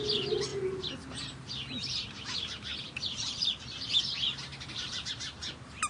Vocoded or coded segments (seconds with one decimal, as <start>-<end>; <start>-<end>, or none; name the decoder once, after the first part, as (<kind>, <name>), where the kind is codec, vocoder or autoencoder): 0.5-4.0 (vocoder, BigVGAN v2)

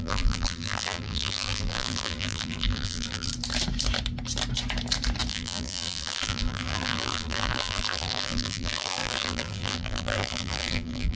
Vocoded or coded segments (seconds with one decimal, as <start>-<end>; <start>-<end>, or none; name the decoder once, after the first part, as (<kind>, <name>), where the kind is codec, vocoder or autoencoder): 0.0-3.3 (vocoder, BigVGAN v2); 5.3-11.1